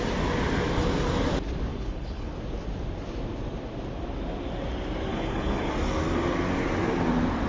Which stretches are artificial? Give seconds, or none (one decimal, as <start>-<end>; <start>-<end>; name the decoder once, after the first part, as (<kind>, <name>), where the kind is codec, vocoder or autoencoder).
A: 1.7-2.3 (codec, HILCodec); 5.1-5.7